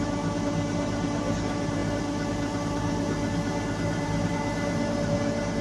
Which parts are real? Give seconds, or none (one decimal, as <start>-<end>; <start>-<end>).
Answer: 0.0-5.6